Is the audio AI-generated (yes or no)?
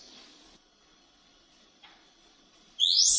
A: yes